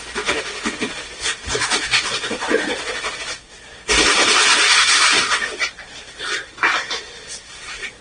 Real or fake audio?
real